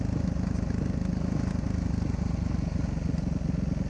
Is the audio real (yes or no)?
yes